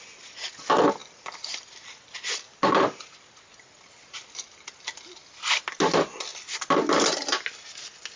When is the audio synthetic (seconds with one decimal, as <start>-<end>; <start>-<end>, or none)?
none